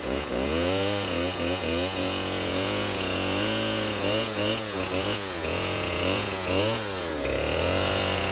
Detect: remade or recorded remade